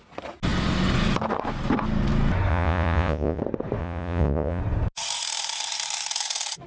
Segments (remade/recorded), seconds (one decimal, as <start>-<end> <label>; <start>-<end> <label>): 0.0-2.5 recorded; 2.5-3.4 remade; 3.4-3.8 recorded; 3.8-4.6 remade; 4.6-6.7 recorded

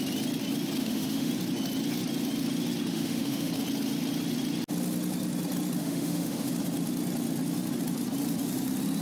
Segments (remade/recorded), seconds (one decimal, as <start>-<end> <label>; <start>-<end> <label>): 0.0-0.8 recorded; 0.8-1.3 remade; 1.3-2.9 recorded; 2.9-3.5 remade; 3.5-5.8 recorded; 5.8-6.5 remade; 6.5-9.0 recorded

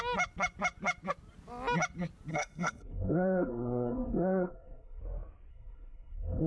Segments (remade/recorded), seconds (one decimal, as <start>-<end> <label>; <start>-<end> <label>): 0.0-2.3 recorded; 2.3-5.0 remade; 5.0-5.5 recorded; 5.5-6.5 remade

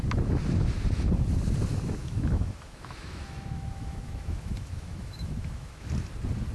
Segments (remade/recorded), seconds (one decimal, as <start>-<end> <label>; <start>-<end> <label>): 0.0-2.0 recorded; 2.0-5.9 remade; 5.9-6.5 recorded

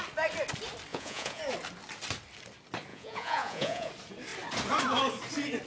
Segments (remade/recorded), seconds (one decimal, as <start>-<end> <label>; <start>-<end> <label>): 0.0-0.9 recorded; 0.9-1.4 remade; 1.4-2.9 recorded; 2.9-3.9 remade; 3.9-5.7 recorded

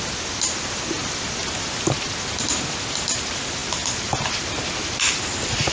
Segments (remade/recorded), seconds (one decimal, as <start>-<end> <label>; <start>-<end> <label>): 0.0-5.7 recorded

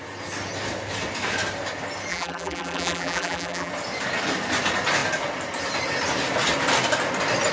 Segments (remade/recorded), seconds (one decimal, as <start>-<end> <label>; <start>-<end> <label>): 0.0-2.1 recorded; 2.1-3.7 remade; 3.7-7.5 recorded

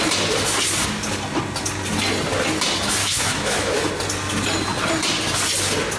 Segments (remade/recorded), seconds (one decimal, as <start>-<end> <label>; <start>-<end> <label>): 0.0-3.0 recorded; 3.0-3.9 remade; 3.9-6.0 recorded